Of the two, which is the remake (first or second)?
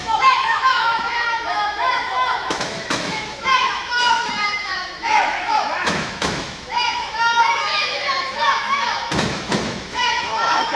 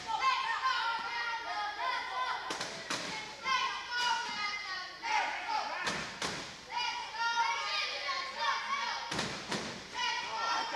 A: first